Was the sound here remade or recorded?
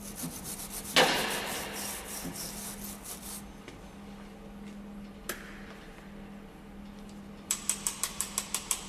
recorded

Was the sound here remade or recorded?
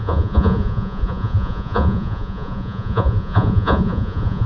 remade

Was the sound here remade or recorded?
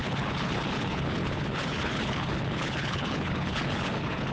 remade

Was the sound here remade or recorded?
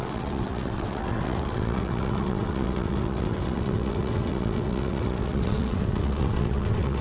remade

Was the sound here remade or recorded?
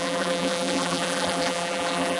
remade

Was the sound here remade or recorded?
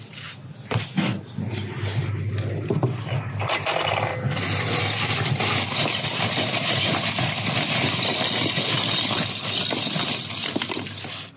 recorded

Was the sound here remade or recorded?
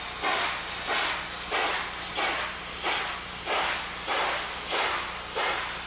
recorded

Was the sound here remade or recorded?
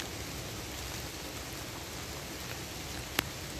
recorded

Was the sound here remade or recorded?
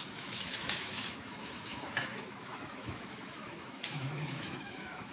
remade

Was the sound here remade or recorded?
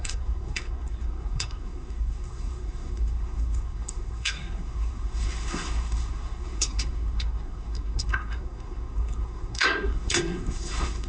remade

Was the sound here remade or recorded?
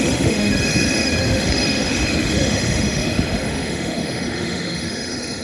remade